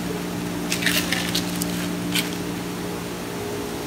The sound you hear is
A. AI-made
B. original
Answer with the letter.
B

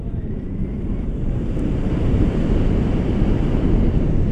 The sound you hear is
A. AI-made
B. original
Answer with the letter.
A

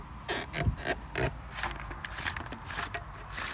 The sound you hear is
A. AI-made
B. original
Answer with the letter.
B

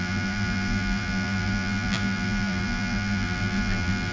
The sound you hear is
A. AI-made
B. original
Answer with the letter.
A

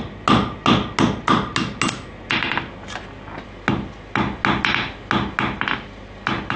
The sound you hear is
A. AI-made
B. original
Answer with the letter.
B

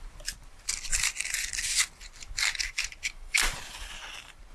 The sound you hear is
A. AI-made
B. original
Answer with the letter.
A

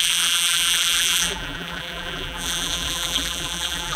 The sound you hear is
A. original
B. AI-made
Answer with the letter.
B